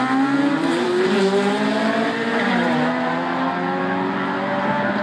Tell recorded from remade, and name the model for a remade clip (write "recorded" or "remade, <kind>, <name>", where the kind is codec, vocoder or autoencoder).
remade, vocoder, BigVGAN v2